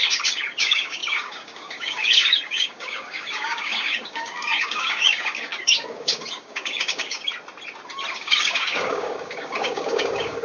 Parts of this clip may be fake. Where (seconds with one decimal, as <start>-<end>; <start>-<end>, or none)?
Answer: 0.0-7.3; 8.1-10.4